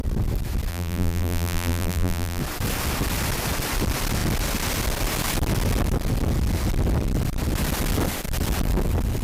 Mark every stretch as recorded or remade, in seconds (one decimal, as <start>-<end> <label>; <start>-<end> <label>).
0.0-0.7 recorded; 0.7-2.4 remade; 2.4-9.2 recorded